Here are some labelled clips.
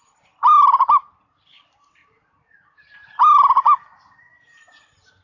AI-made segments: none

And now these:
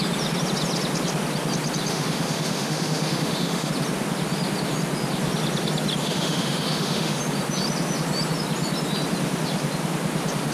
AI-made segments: 1.9-3.7 (autoencoder, DAC-VAE); 6.0-7.2

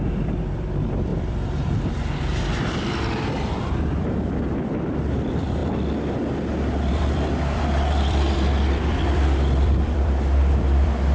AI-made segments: 0.0-5.6 (vocoder, BigVGAN v2); 6.9-11.1